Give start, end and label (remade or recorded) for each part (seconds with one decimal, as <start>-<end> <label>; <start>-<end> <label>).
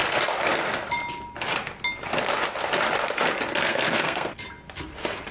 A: 0.0-3.7 recorded; 3.7-4.3 remade; 4.3-5.3 recorded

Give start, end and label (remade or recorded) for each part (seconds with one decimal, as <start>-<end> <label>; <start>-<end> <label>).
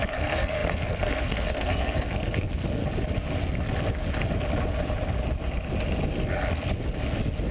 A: 0.0-2.8 remade; 2.8-7.5 recorded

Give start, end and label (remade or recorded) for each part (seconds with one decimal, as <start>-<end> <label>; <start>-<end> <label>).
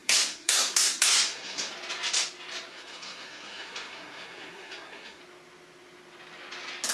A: 0.0-1.7 remade; 1.7-2.7 recorded; 2.7-5.2 remade; 5.2-6.9 recorded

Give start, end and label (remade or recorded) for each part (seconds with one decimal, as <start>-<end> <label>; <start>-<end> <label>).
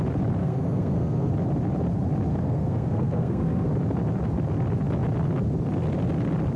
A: 0.0-0.4 recorded; 0.4-1.3 remade; 1.3-2.3 recorded; 2.3-3.7 remade; 3.7-6.6 recorded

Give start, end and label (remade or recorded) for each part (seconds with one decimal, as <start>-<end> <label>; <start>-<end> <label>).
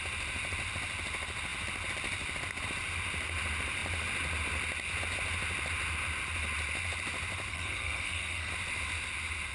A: 0.0-7.5 recorded; 7.5-8.5 remade; 8.5-9.5 recorded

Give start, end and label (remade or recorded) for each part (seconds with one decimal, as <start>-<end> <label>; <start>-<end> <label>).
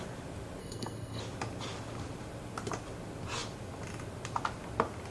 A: 0.0-0.6 recorded; 0.6-1.2 remade; 1.2-5.1 recorded